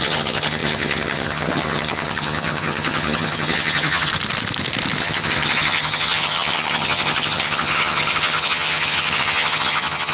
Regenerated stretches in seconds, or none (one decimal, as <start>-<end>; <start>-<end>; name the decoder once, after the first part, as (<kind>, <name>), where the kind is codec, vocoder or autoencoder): 0.0-4.1 (vocoder, HiFi-GAN); 5.0-10.1